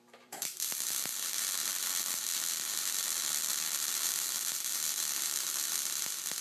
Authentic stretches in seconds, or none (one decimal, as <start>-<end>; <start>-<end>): none